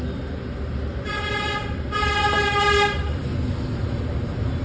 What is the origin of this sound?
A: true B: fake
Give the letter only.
A